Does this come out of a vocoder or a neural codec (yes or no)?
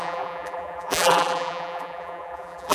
yes